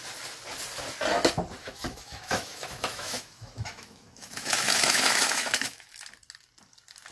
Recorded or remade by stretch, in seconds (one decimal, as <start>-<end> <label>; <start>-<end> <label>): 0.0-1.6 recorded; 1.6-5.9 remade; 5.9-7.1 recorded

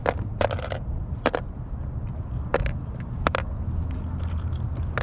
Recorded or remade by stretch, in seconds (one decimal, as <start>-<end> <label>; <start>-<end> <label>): 0.0-5.0 recorded

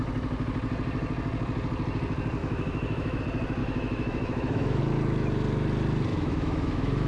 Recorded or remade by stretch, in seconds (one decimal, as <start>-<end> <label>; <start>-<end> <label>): 0.0-2.4 recorded; 2.4-3.2 remade; 3.2-3.6 recorded; 3.6-4.8 remade; 4.8-6.1 recorded; 6.1-7.1 remade